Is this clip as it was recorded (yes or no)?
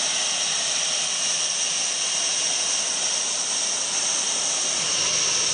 yes